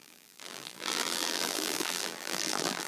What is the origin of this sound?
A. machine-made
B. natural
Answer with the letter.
A